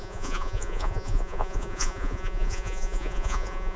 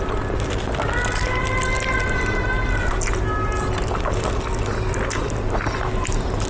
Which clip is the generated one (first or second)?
first